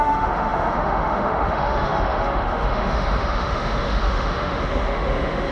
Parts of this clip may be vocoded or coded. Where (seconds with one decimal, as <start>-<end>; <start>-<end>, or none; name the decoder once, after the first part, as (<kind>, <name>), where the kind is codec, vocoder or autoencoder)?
0.0-5.5 (autoencoder, DAC-VAE)